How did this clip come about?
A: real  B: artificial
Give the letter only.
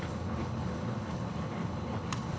B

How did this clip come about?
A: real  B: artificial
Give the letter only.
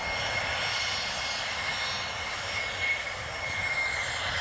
A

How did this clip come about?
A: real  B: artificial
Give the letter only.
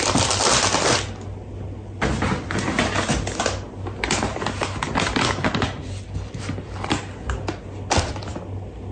A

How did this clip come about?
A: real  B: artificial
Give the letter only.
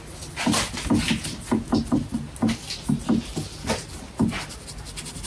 A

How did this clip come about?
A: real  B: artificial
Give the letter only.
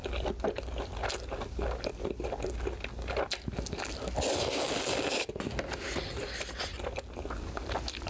A